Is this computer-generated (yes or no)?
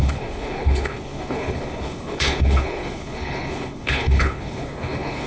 yes